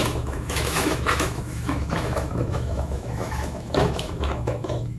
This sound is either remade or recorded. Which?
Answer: remade